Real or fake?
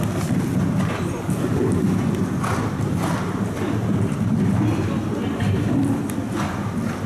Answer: real